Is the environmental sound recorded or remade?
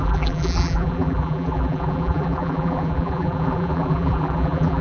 remade